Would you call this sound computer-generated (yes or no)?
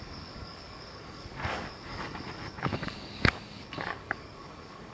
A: yes